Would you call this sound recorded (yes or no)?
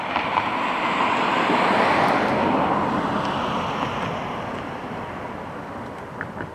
yes